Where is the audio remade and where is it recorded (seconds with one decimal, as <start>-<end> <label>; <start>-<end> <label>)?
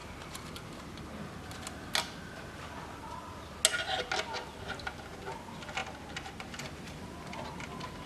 0.0-8.1 recorded